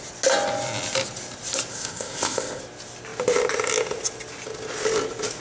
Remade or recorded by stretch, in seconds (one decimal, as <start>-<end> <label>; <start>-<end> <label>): 0.0-1.7 recorded; 1.7-2.6 remade; 2.6-5.4 recorded